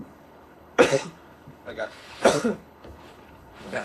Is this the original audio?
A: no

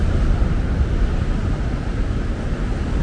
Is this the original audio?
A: yes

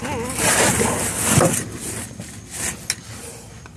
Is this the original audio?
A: yes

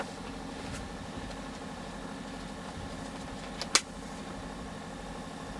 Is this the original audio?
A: yes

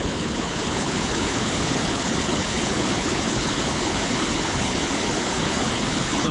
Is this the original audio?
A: no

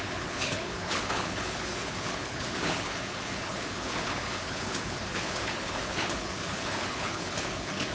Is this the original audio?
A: no